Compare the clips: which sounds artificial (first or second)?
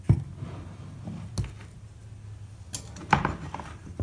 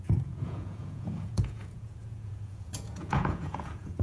second